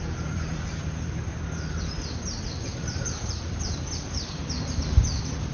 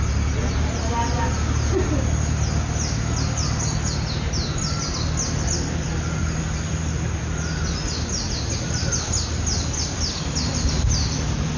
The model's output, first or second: first